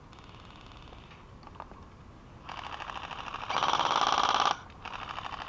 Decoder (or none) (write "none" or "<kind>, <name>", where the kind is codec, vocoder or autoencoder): none